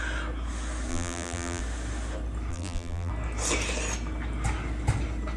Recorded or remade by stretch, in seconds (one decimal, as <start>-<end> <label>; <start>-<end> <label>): 0.0-0.9 recorded; 0.9-1.6 remade; 1.6-2.5 recorded; 2.5-3.1 remade; 3.1-5.4 recorded